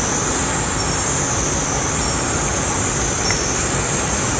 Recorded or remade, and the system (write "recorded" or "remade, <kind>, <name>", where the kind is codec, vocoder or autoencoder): recorded